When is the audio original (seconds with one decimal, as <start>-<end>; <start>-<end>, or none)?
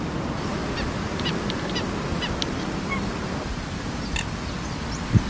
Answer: 0.0-5.3